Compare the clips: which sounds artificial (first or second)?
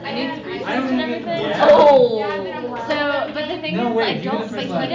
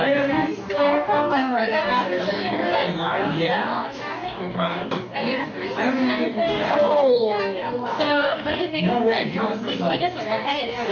second